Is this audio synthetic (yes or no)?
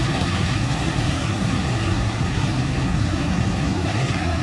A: yes